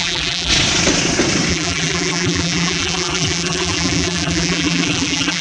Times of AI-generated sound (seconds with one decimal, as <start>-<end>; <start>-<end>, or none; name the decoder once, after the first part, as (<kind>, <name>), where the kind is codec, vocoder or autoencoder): 0.0-0.5 (vocoder, BigVGAN v2); 1.5-5.4